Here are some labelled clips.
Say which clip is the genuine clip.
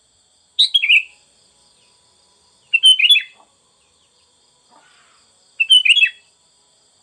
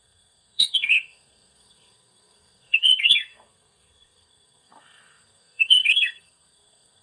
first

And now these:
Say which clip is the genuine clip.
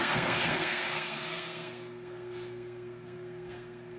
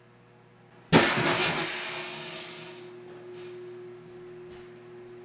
second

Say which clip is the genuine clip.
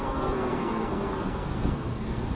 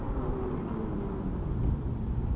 second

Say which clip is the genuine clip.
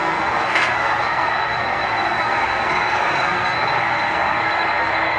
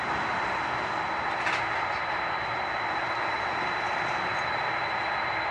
second